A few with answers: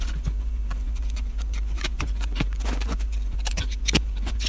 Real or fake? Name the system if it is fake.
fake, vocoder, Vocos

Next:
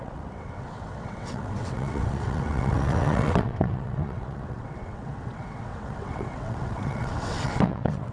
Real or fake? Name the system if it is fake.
fake, vocoder, WaveNeXt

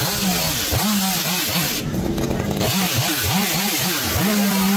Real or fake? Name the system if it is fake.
real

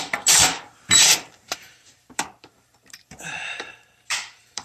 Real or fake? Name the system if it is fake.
fake, vocoder, BigVGAN v2